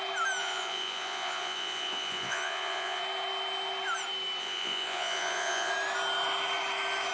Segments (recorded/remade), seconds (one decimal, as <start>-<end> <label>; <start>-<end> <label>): 0.0-0.4 recorded; 0.4-3.0 remade; 3.0-4.4 recorded; 4.4-5.7 remade; 5.7-7.1 recorded